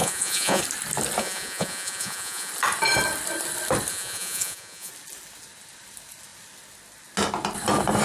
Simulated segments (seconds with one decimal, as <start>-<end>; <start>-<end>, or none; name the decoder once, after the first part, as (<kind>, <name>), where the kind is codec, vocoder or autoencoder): 0.0-0.6 (vocoder, Vocos); 1.2-2.5; 3.9-4.9